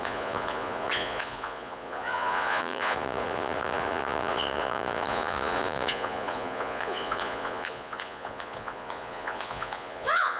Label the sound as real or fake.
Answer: fake